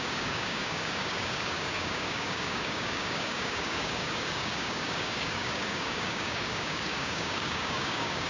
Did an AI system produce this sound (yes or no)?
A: yes